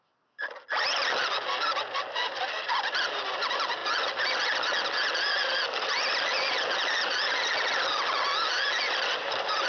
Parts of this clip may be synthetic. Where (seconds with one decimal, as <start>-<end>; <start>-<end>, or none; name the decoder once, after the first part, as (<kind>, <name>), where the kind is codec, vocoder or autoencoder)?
none